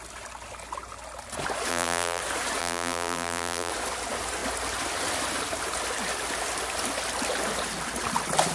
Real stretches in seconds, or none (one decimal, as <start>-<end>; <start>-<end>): 0.0-1.7; 2.2-2.6; 3.7-8.5